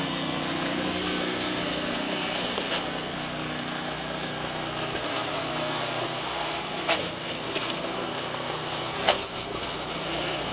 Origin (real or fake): fake